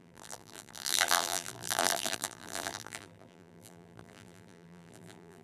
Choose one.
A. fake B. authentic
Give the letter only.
A